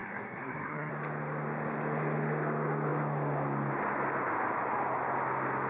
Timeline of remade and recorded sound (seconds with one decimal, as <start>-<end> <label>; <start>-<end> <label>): 0.0-0.9 remade; 0.9-5.7 recorded